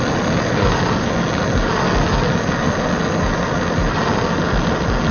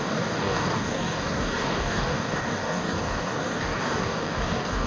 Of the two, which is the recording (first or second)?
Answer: first